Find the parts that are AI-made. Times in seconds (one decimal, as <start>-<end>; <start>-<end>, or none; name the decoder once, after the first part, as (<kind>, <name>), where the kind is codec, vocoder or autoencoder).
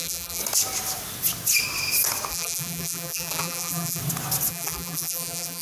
0.0-0.4 (vocoder, BigVGAN v2); 2.3-4.0; 4.5-5.6